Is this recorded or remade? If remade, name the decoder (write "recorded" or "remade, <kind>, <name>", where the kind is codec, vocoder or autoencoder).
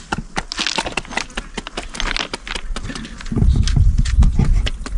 recorded